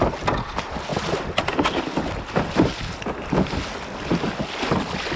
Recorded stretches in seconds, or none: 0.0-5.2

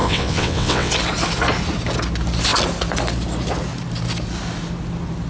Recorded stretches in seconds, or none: 0.9-5.3

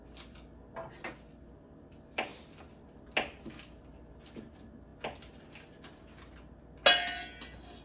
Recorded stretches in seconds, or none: 0.0-7.8

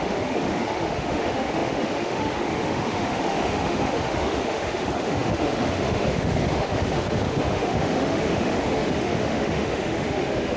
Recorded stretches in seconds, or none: none

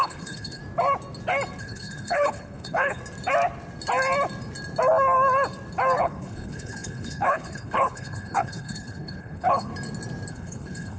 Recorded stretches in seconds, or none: 0.6-1.6; 3.0-6.0; 9.7-10.3

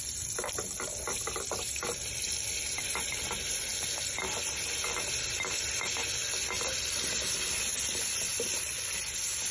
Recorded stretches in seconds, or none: 3.7-4.4

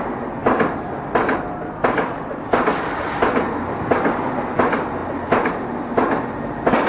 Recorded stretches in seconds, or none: 0.0-6.9